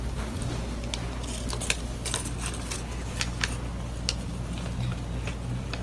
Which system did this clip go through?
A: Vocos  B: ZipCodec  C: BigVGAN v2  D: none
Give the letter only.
D